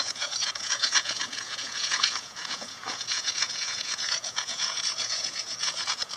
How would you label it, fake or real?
fake